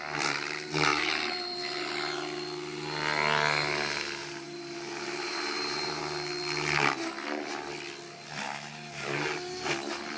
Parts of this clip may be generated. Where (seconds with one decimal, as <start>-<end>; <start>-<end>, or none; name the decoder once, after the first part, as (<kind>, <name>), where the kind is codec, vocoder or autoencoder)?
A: 0.9-1.9 (vocoder, BigVGAN v2); 4.2-6.0